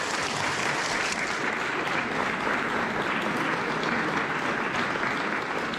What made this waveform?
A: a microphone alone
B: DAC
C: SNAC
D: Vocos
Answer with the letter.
A